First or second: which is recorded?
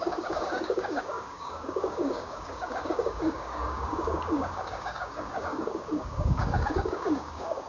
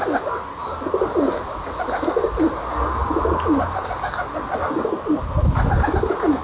second